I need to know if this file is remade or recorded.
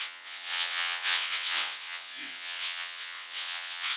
remade